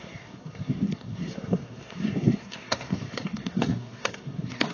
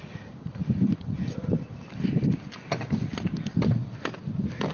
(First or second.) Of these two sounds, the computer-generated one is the first